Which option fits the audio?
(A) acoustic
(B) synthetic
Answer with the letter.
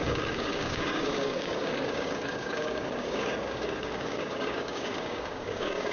B